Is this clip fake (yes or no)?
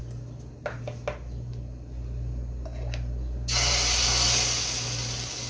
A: no